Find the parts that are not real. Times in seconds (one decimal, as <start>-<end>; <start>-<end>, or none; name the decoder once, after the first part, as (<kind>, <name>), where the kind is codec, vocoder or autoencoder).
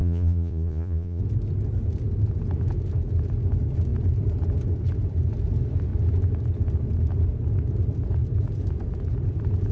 0.0-1.2 (vocoder, Vocos)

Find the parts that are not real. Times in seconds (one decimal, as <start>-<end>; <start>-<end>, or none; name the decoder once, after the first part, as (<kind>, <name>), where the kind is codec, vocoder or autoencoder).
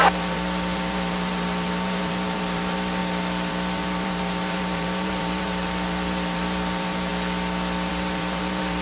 0.0-3.0 (vocoder, BigVGAN v2); 3.5-7.1; 7.9-8.8